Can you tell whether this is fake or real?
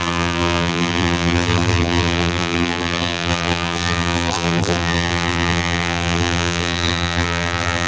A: fake